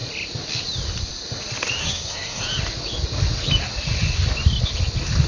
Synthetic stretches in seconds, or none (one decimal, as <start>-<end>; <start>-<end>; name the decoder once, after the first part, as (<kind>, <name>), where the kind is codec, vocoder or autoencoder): 1.8-2.4 (codec, SNAC)